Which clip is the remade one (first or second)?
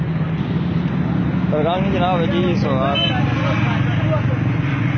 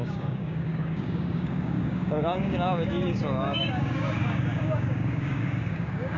second